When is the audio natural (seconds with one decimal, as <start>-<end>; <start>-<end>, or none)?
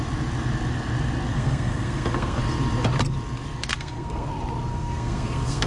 0.0-1.3; 2.4-3.7; 4.3-4.7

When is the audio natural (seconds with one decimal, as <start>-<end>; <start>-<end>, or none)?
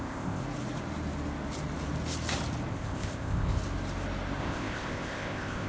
0.4-2.7; 3.6-4.4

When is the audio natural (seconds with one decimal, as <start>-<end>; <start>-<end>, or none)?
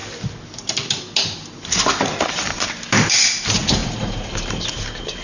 0.0-5.2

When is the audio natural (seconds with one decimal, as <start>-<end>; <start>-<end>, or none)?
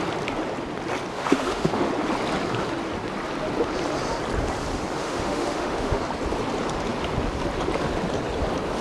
0.0-1.1; 1.9-5.0; 6.0-8.8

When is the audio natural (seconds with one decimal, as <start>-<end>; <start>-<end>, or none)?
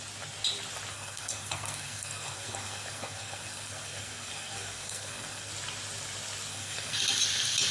0.0-0.9; 5.5-6.5; 7.0-7.7